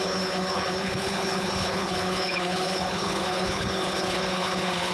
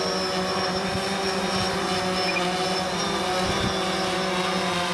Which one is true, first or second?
second